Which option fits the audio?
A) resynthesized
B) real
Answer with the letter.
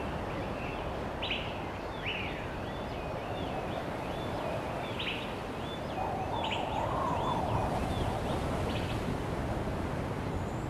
B